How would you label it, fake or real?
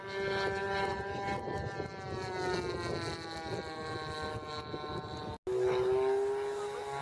real